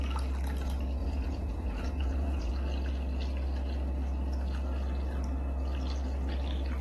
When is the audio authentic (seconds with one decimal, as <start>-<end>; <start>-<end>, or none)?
0.0-1.0; 2.5-6.8